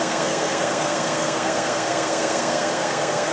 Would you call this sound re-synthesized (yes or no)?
yes